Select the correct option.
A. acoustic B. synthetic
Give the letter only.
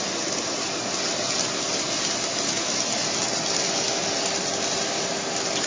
A